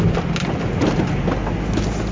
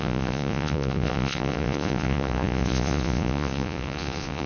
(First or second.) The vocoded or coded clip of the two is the second